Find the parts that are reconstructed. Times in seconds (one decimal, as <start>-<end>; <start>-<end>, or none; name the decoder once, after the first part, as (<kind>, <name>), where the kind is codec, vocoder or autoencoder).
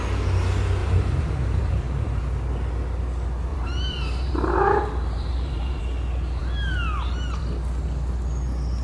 0.8-2.2 (vocoder, BigVGAN v2); 3.5-5.8